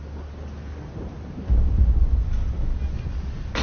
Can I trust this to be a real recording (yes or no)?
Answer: yes